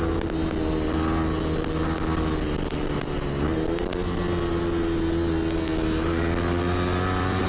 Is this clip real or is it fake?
real